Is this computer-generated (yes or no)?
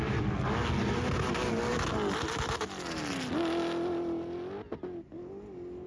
no